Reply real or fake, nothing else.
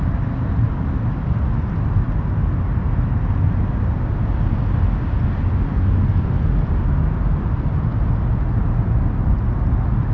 real